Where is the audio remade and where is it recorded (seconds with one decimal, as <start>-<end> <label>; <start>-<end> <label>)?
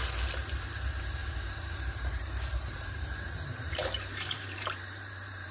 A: 0.0-0.7 recorded; 0.7-5.5 remade